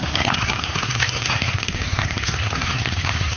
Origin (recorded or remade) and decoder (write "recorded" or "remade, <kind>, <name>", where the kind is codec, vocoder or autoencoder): remade, codec, SNAC